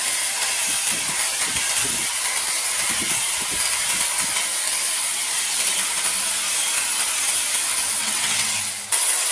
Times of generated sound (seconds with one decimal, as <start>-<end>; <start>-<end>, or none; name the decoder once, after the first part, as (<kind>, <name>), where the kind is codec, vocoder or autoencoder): 8.0-8.6 (vocoder, WaveNeXt)